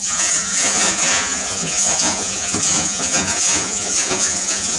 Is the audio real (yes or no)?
no